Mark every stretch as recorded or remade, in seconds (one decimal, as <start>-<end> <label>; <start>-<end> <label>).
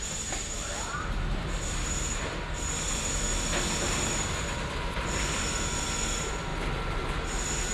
0.0-7.7 recorded